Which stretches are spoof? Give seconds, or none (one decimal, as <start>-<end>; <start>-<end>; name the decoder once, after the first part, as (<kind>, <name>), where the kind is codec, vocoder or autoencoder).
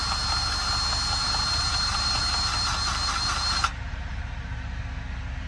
1.2-2.2 (vocoder, BigVGAN v2); 3.7-4.2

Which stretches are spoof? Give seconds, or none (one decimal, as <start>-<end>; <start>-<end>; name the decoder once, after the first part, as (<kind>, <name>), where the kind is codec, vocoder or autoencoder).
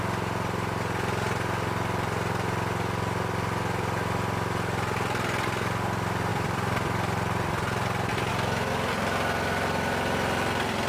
6.3-8.3 (vocoder, BigVGAN v2)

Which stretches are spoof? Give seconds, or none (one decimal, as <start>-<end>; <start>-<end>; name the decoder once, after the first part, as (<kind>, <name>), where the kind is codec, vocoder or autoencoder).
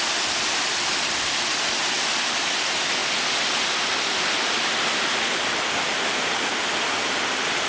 none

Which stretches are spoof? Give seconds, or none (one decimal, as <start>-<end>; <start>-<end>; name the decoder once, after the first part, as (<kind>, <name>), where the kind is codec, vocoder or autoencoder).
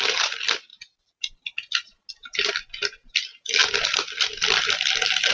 none